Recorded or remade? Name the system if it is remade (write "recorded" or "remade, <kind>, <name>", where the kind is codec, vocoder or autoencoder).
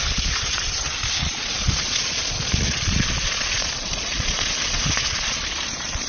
remade, vocoder, Vocos